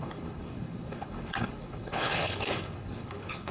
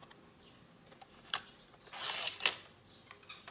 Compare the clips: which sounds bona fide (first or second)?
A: second